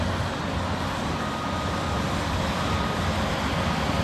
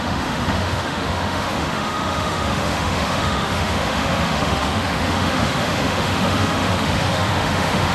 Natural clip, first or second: first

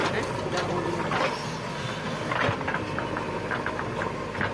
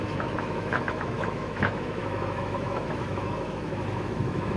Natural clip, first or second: first